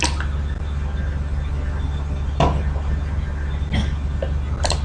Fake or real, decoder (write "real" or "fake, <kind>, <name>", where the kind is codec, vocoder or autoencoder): real